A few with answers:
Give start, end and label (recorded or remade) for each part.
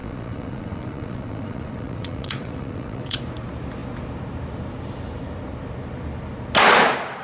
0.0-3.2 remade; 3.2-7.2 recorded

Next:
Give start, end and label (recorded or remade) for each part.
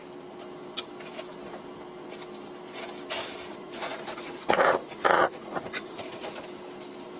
0.0-3.5 recorded; 3.5-6.4 remade; 6.4-7.2 recorded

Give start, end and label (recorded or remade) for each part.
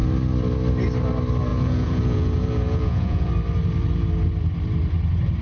0.0-1.5 recorded; 1.5-3.3 remade; 3.3-5.4 recorded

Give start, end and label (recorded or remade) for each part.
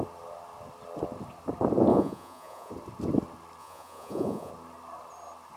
0.0-1.9 recorded; 1.9-2.7 remade; 2.7-3.6 recorded; 3.6-4.5 remade; 4.5-5.6 recorded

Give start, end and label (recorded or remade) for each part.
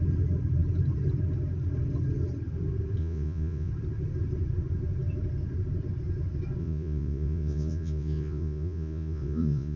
0.0-3.0 recorded; 3.0-3.7 remade; 3.7-6.6 recorded; 6.6-9.8 remade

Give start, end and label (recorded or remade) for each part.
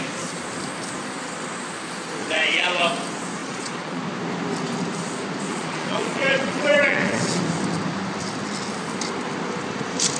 0.0-2.2 recorded; 2.2-2.8 remade; 2.8-3.4 recorded; 3.4-4.0 remade; 4.0-5.5 recorded; 5.5-7.4 remade; 7.4-10.2 recorded